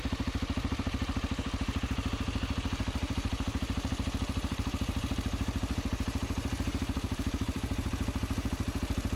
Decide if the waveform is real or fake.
fake